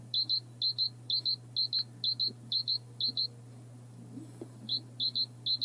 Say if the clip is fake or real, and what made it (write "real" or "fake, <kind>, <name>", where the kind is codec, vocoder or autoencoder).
real